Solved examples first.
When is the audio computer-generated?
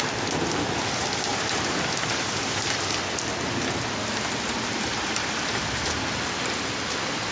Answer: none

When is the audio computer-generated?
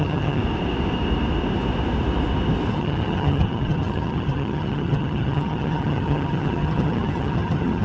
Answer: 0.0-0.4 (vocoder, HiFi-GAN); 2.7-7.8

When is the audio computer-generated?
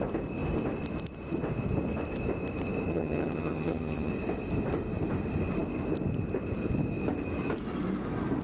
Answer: 2.9-4.1 (vocoder, HiFi-GAN)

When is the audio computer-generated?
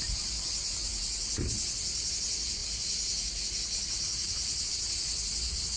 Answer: none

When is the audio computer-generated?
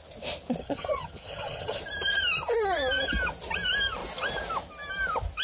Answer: 0.6-1.8 (vocoder, HiFi-GAN)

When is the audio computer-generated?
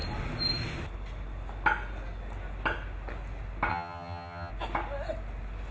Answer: 3.7-4.5 (vocoder, HiFi-GAN)